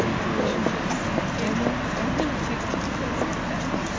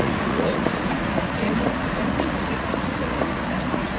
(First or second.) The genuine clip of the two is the first